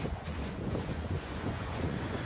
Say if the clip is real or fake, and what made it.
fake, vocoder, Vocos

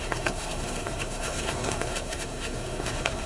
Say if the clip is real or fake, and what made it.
fake, codec, SNAC